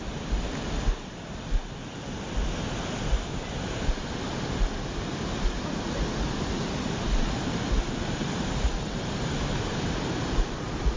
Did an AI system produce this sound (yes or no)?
no